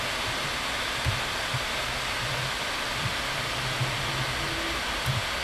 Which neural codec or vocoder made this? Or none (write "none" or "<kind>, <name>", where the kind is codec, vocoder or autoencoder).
none